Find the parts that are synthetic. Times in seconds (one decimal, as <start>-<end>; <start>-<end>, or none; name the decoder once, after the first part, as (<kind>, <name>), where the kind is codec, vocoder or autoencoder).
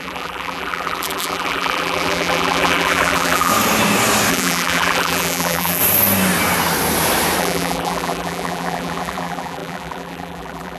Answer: 0.0-3.5 (vocoder, BigVGAN v2); 4.3-5.8; 7.4-10.8